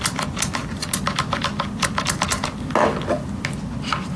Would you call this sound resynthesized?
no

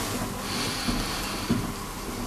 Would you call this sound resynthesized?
no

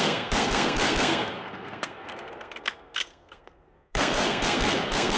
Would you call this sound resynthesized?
yes